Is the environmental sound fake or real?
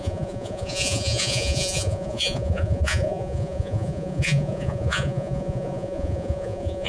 fake